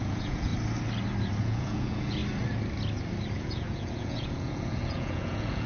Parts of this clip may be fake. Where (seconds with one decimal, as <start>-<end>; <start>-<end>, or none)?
0.0-0.5; 1.4-2.2; 3.3-5.7